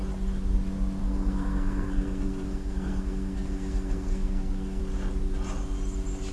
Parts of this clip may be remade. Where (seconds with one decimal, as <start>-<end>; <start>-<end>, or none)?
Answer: 1.0-4.8